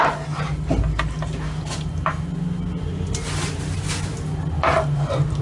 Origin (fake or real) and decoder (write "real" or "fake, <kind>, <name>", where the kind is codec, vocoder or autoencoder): real